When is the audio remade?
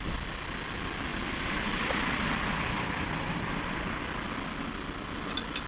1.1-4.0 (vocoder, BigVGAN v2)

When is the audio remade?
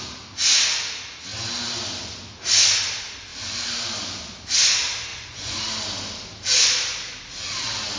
5.1-5.6 (vocoder, Vocos)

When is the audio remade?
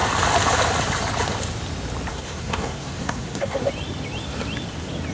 2.1-3.7 (codec, SNAC)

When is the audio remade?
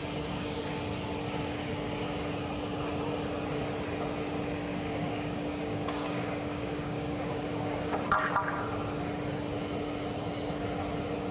0.0-0.6 (codec, DAC); 4.7-8.0